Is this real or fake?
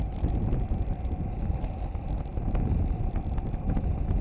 real